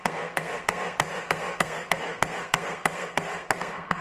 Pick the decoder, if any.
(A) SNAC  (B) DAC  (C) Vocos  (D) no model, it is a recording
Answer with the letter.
A